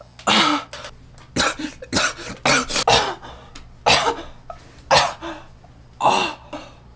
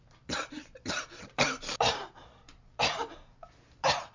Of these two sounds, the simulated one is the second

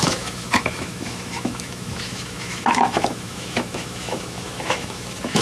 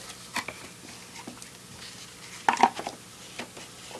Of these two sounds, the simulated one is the first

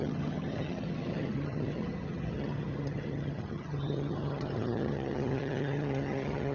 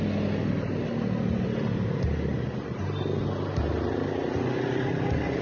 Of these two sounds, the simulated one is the first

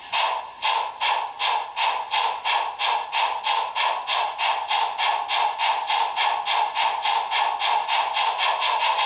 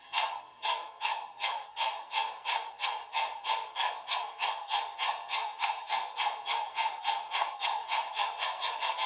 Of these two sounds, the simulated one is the second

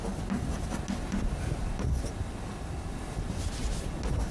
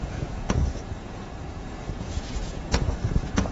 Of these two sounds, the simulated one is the second